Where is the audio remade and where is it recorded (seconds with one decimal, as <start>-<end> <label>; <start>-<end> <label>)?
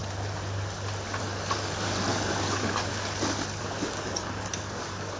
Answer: 0.0-1.2 recorded; 1.2-2.9 remade; 2.9-3.8 recorded; 3.8-5.2 remade